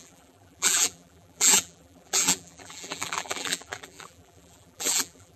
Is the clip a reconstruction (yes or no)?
yes